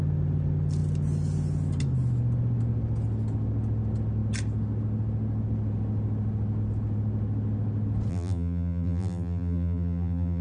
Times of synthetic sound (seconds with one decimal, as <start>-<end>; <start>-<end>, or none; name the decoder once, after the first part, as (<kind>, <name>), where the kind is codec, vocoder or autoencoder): 8.1-10.4 (vocoder, BigVGAN v2)

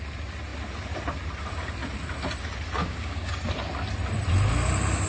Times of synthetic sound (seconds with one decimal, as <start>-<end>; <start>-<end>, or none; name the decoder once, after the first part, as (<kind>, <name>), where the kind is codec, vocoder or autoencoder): 2.8-3.3 (codec, DAC)

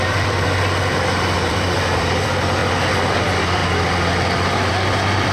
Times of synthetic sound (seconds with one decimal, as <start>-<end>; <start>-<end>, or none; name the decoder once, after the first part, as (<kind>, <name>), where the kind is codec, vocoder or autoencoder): 0.0-2.6 (vocoder, BigVGAN v2); 3.1-3.6; 4.7-5.3

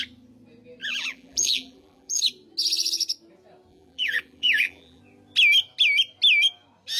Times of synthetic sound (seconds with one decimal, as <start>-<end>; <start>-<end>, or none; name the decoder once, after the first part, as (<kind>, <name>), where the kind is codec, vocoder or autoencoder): 0.8-2.2 (vocoder, BigVGAN v2); 3.7-5.0

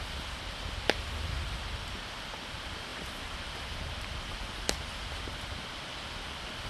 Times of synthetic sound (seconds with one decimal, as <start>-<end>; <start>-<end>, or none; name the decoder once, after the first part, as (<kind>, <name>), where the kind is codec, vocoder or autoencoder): 2.9-6.7 (vocoder, BigVGAN v2)